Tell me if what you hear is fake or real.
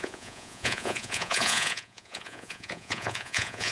fake